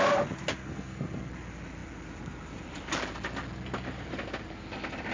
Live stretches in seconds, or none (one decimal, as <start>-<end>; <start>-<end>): 0.0-0.6; 1.3-5.1